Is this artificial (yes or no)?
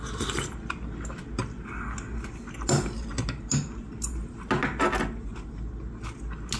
no